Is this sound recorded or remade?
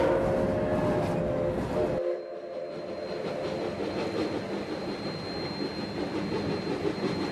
recorded